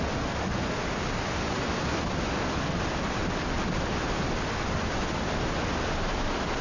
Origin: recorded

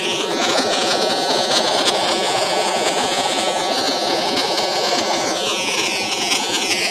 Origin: remade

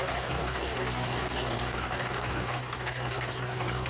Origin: remade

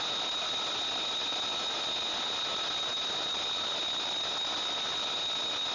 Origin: recorded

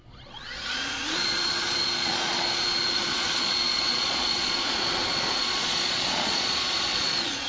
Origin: remade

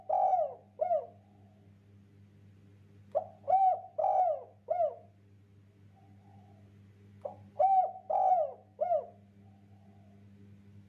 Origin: recorded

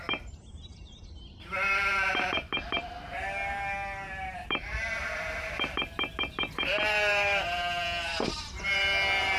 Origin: remade